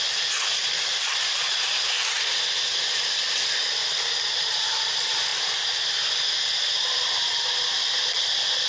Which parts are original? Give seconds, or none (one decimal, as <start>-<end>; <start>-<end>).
0.0-8.7